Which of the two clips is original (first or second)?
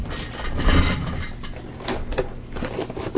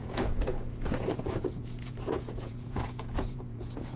first